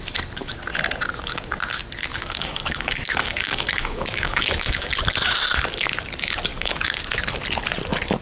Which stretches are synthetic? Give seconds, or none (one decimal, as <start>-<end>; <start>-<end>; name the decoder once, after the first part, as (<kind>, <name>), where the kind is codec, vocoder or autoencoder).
2.1-4.9 (codec, DAC); 6.5-7.0